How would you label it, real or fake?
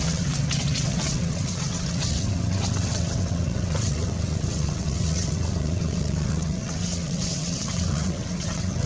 fake